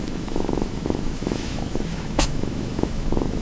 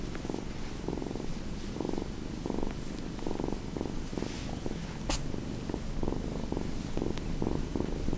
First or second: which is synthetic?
first